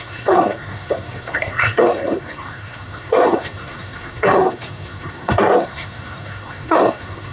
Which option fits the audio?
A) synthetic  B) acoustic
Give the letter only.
A